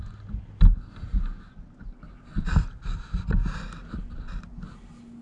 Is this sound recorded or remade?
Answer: recorded